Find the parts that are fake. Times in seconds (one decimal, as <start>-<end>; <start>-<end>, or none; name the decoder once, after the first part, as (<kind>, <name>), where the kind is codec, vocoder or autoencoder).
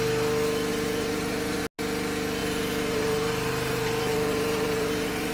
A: 0.7-1.6 (vocoder, BigVGAN v2); 2.4-5.3